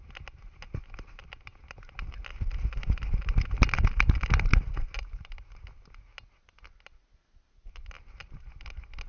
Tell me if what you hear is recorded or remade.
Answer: recorded